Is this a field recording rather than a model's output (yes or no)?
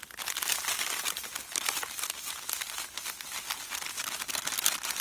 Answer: yes